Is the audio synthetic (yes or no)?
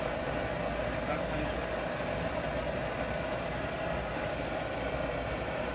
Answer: no